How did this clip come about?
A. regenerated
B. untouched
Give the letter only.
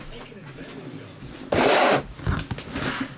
B